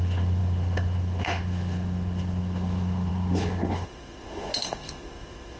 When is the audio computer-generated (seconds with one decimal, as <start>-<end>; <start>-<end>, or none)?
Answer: 0.0-5.6